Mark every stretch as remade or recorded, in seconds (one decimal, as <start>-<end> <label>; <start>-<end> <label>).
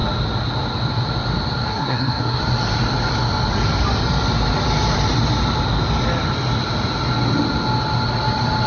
0.0-1.7 recorded; 1.7-2.4 remade; 2.4-8.7 recorded